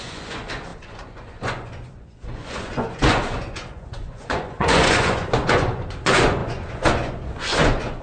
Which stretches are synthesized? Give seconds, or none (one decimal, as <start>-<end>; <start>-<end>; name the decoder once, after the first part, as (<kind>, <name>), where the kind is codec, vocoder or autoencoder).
0.0-8.0 (vocoder, Vocos)